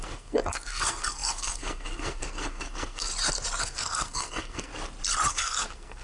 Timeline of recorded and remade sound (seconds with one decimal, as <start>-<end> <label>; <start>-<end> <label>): 0.0-3.1 remade; 3.1-3.6 recorded; 3.6-4.7 remade; 4.7-5.3 recorded; 5.3-6.0 remade

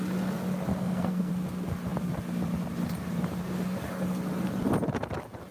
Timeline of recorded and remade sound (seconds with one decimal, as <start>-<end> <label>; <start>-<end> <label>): 0.0-0.7 recorded; 0.7-1.3 remade; 1.3-5.5 recorded

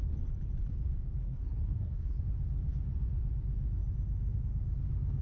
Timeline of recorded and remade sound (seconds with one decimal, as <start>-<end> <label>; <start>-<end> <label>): 0.0-1.2 recorded; 1.2-2.2 remade; 2.2-5.2 recorded